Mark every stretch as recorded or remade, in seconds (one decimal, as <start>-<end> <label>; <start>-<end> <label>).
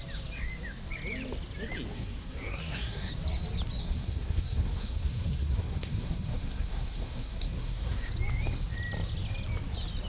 0.0-1.9 recorded; 1.9-3.1 remade; 3.1-3.8 recorded; 3.8-8.1 remade; 8.1-10.1 recorded